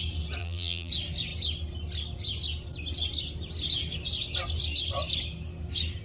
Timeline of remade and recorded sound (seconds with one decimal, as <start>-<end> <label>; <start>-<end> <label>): 0.0-0.4 recorded; 0.4-0.9 remade; 0.9-6.0 recorded